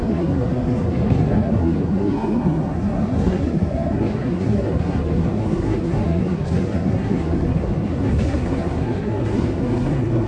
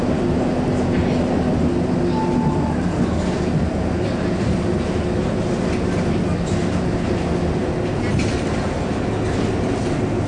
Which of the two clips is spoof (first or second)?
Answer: first